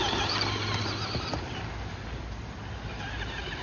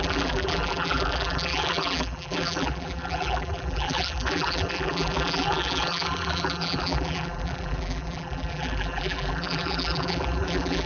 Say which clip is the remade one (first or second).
second